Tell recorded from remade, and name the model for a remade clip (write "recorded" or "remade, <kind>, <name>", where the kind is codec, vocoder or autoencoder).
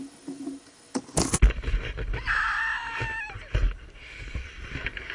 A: recorded